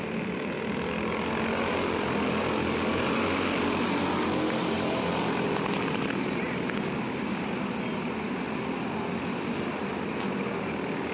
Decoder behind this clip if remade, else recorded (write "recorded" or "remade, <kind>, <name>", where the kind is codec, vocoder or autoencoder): recorded